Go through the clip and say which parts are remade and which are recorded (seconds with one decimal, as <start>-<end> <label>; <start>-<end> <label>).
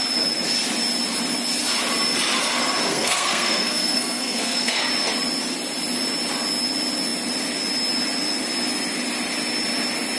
0.0-2.9 recorded; 2.9-4.8 remade; 4.8-10.2 recorded